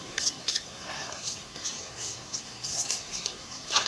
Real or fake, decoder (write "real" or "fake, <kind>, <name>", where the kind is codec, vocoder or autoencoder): fake, codec, SNAC